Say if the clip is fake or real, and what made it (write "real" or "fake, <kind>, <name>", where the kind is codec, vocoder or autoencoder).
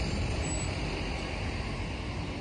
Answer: real